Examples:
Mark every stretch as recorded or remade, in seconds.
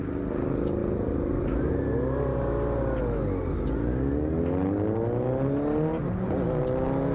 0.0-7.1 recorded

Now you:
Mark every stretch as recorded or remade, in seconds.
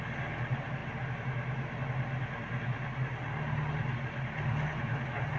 0.0-5.4 recorded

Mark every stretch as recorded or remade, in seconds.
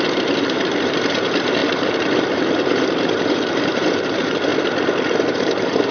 0.0-4.5 remade; 4.5-5.3 recorded; 5.3-5.9 remade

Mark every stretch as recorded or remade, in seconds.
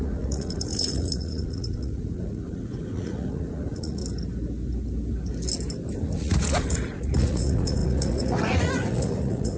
0.0-4.0 remade; 4.0-6.0 recorded; 6.0-9.6 remade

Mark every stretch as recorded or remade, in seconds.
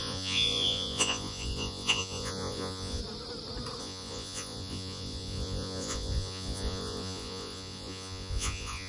0.0-3.0 remade; 3.0-3.8 recorded; 3.8-8.9 remade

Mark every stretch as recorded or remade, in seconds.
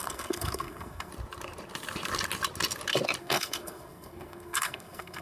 0.0-1.1 remade; 1.1-3.2 recorded; 3.2-5.2 remade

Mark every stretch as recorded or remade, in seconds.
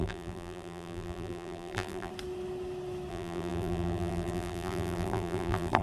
0.0-2.1 remade; 2.1-3.1 recorded; 3.1-5.8 remade